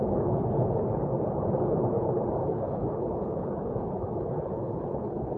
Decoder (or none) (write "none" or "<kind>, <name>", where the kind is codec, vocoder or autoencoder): codec, HILCodec